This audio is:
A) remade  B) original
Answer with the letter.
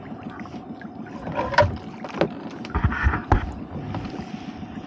B